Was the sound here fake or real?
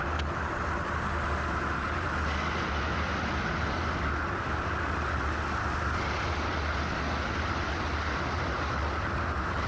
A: real